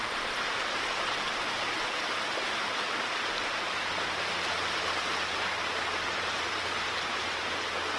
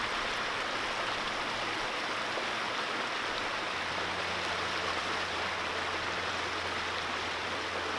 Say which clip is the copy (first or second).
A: first